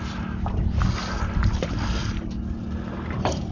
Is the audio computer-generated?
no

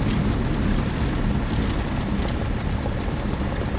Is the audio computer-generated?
no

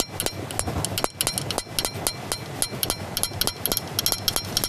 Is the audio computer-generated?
no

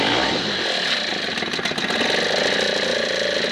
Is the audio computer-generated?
no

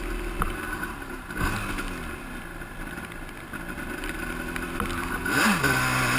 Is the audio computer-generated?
no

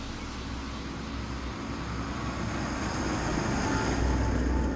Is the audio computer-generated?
no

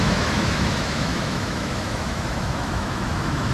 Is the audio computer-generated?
yes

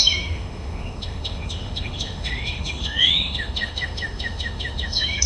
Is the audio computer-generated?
yes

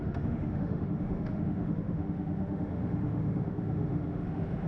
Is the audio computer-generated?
yes